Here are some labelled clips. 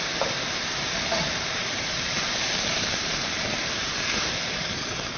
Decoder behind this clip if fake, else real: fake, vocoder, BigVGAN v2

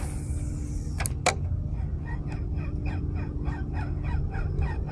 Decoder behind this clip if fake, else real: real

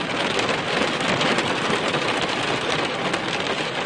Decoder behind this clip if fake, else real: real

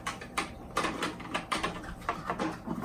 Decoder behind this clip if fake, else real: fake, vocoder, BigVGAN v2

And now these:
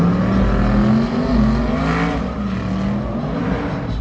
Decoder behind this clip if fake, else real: real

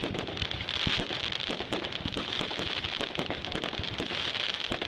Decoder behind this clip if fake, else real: fake, vocoder, BigVGAN v2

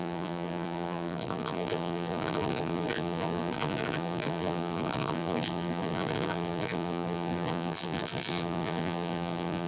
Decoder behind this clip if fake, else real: fake, vocoder, BigVGAN v2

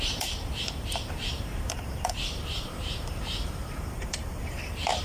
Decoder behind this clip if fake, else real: fake, vocoder, BigVGAN v2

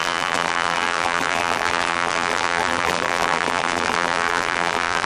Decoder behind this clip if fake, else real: fake, vocoder, BigVGAN v2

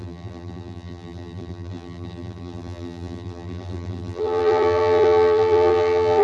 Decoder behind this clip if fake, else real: fake, vocoder, BigVGAN v2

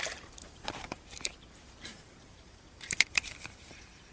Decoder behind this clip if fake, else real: fake, vocoder, BigVGAN v2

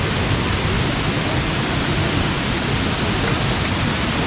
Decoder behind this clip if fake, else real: real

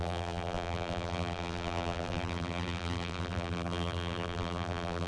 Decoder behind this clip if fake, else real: fake, vocoder, BigVGAN v2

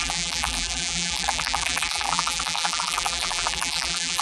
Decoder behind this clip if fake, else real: fake, vocoder, BigVGAN v2